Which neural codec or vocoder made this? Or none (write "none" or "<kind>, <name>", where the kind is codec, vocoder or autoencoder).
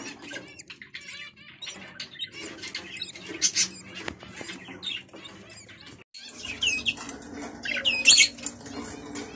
none